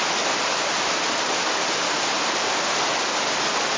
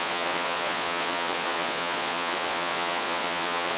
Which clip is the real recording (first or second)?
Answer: first